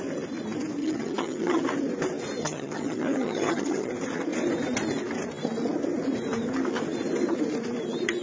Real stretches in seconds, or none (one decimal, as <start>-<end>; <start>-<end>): 0.0-0.8; 1.6-2.4; 3.9-8.2